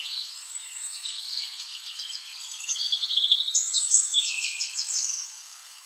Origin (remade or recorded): remade